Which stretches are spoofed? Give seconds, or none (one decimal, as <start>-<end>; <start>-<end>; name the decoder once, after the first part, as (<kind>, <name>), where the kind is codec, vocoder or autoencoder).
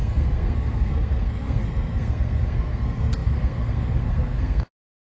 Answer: 0.0-5.1 (codec, SNAC)